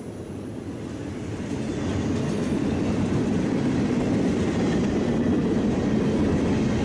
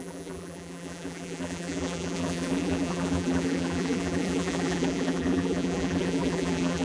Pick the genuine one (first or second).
first